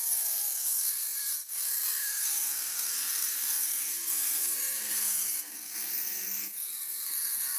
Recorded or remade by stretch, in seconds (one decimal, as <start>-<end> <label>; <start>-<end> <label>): 0.0-7.6 remade